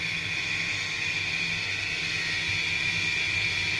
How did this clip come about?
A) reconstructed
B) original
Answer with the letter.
B